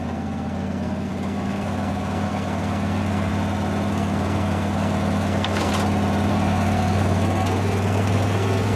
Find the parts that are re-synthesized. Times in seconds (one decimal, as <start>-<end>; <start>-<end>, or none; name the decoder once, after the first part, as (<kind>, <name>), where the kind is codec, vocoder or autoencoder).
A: 0.0-3.3 (codec, SNAC); 3.9-5.7; 6.3-8.8